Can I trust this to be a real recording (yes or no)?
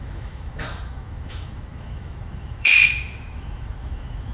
no